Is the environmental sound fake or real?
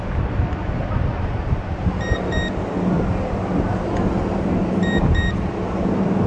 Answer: real